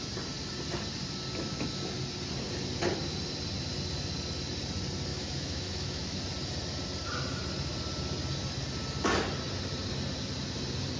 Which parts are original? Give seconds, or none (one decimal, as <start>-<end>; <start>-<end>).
0.0-5.1; 6.2-11.0